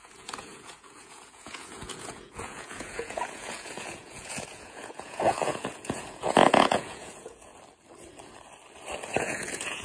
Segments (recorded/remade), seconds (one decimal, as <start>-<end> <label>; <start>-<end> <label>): 0.0-7.5 remade; 7.5-9.2 recorded; 9.2-9.8 remade